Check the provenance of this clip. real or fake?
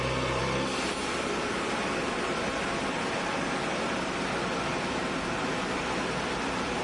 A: fake